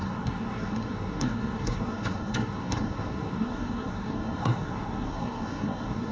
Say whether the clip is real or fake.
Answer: fake